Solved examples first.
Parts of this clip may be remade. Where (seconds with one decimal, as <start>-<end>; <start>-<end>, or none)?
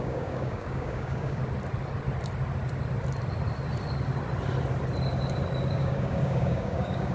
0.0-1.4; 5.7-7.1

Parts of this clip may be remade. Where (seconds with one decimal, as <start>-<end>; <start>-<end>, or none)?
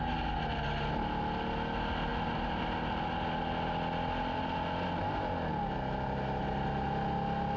none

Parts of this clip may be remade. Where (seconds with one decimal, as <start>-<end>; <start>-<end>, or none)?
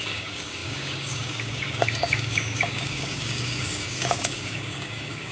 0.0-5.3